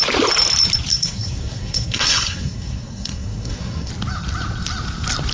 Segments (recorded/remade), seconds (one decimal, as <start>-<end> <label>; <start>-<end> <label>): 0.0-0.9 recorded; 0.9-3.9 remade; 3.9-5.3 recorded